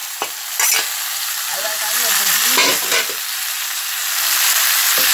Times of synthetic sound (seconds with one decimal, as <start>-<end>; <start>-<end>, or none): none